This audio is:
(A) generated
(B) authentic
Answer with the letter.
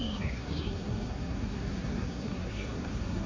A